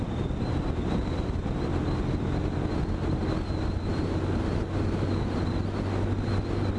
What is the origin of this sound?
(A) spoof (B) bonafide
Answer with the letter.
B